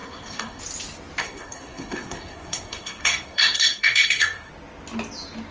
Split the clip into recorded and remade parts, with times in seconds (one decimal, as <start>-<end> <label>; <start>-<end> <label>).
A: 0.0-0.6 remade; 0.6-1.2 recorded; 1.2-4.5 remade; 4.5-5.5 recorded